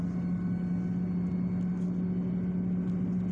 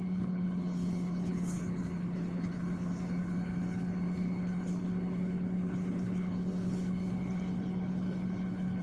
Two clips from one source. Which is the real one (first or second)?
first